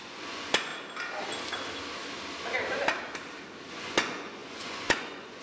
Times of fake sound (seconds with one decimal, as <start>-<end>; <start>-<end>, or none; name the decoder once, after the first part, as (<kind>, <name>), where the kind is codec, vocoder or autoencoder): 0.0-0.7 (vocoder, Vocos); 3.7-5.4